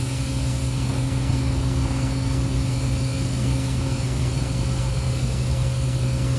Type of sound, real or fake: fake